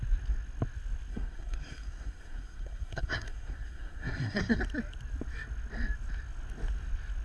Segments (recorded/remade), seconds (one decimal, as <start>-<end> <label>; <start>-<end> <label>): 0.0-1.1 recorded; 1.1-4.6 remade; 4.6-7.2 recorded

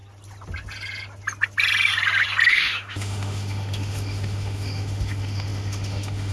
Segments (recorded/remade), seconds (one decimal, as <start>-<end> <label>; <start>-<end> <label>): 0.0-2.5 recorded; 2.5-6.3 remade